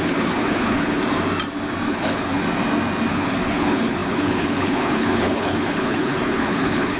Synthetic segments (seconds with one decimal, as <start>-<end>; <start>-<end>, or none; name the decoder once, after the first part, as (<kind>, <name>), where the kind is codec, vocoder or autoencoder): 0.0-1.0 (codec, HILCodec); 1.9-2.4; 3.1-7.0